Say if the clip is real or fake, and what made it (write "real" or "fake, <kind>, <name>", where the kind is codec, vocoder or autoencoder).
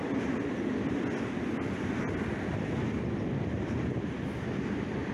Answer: real